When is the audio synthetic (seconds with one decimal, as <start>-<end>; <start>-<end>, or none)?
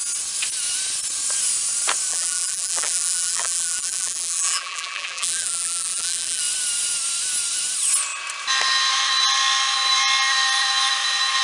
2.1-6.4